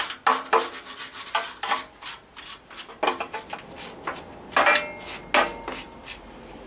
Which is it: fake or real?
real